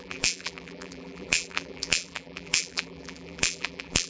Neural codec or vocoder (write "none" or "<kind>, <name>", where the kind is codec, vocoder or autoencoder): vocoder, BigVGAN v2